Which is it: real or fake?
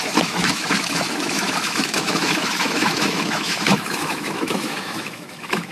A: fake